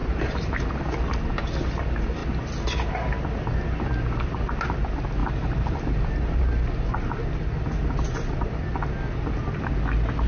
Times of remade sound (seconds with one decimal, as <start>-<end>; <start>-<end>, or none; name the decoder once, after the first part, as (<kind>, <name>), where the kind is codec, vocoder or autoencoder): 0.0-0.7 (vocoder, BigVGAN v2); 5.2-6.9